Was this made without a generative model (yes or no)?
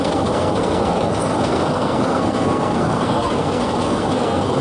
no